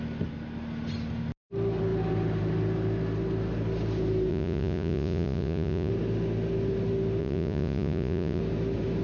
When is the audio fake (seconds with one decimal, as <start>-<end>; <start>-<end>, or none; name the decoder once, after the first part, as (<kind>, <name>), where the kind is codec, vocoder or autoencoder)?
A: 4.3-5.9 (vocoder, Vocos); 7.2-8.4